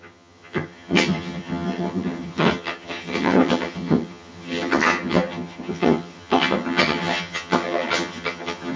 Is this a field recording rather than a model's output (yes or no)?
no